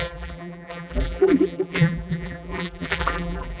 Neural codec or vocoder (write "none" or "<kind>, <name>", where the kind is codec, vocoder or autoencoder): vocoder, BigVGAN v2